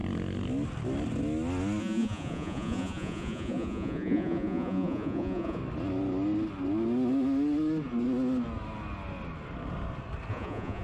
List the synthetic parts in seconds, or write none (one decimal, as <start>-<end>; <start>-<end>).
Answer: 1.8-5.6; 10.3-10.8

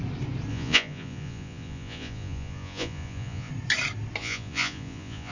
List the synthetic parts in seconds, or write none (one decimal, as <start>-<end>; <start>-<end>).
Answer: 0.5-3.5; 4.2-5.3

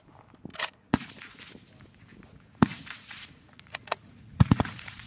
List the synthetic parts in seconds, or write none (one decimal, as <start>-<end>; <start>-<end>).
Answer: 0.5-1.4; 2.1-5.1

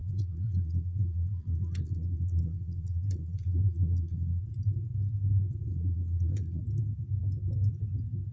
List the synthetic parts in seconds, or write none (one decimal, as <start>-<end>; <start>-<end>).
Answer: 0.0-4.4; 5.7-6.6

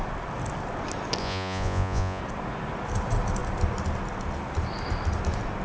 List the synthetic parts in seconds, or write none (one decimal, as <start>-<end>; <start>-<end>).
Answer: 1.2-2.2